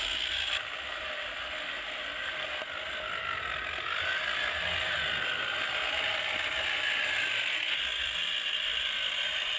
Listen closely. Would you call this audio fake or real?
real